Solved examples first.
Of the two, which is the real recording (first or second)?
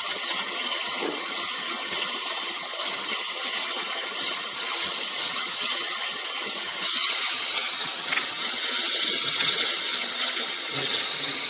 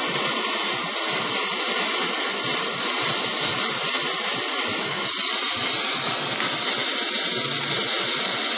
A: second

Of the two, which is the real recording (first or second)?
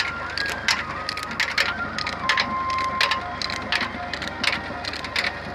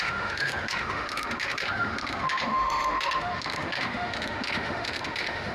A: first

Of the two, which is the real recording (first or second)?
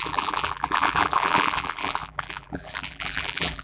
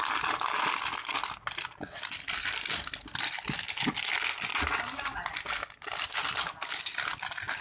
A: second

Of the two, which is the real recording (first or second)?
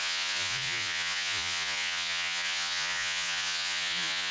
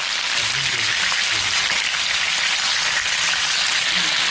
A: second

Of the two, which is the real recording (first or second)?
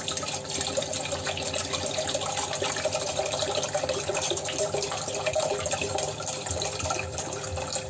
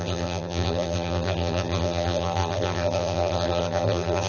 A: first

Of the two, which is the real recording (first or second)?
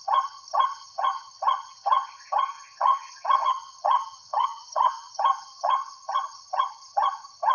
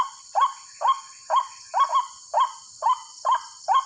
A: second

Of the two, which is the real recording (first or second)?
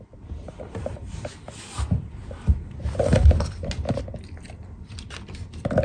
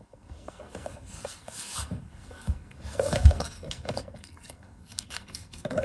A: first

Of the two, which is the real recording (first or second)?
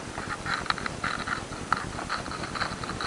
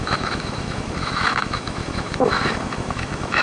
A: first